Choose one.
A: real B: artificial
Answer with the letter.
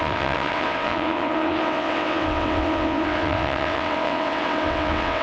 B